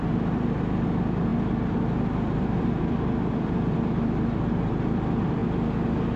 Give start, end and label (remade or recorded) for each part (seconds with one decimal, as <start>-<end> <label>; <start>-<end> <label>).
0.0-5.4 remade; 5.4-6.2 recorded

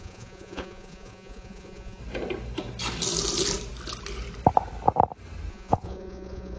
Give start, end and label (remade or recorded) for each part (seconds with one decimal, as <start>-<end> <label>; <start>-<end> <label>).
0.0-2.0 remade; 2.0-5.5 recorded; 5.5-6.6 remade

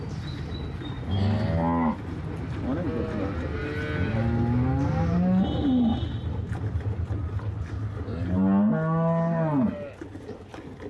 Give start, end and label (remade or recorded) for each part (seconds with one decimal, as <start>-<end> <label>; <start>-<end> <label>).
0.0-10.9 recorded

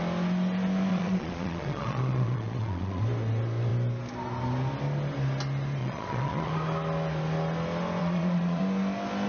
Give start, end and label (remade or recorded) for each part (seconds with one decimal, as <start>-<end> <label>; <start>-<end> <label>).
0.0-0.9 recorded; 0.9-3.0 remade; 3.0-5.8 recorded; 5.8-6.5 remade; 6.5-8.0 recorded; 8.0-8.6 remade; 8.6-9.3 recorded

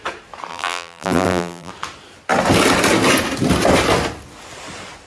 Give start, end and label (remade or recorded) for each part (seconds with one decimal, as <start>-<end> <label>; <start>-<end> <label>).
0.0-0.5 recorded; 0.5-1.7 remade; 1.7-5.1 recorded

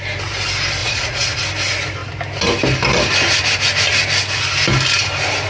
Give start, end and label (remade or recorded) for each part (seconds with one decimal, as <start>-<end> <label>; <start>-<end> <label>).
0.0-0.8 recorded; 0.8-1.4 remade; 1.4-5.5 recorded